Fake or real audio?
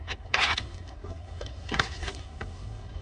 fake